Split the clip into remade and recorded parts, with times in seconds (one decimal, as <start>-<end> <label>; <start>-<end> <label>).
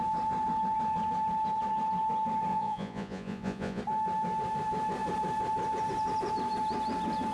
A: 0.0-2.5 recorded; 2.5-3.8 remade; 3.8-7.3 recorded